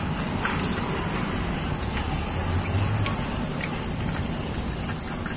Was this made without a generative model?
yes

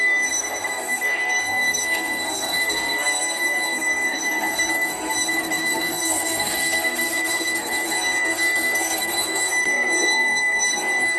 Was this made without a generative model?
no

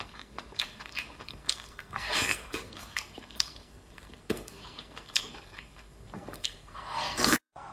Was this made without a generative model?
no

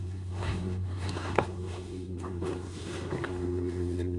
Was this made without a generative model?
no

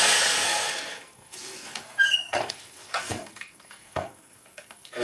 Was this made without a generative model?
no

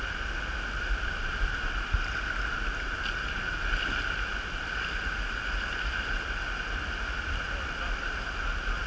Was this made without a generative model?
yes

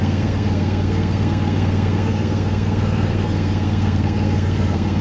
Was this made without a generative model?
no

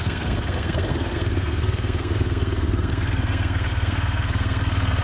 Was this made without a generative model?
no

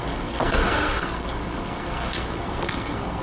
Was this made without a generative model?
no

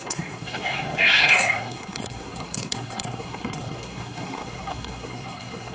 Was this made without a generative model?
no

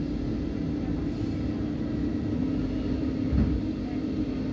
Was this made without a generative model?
yes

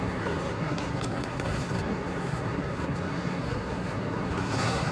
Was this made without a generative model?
no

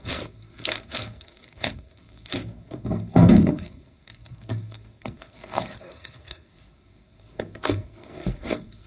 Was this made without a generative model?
no